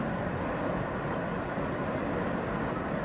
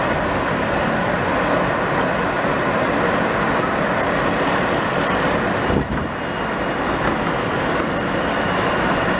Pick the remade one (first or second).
first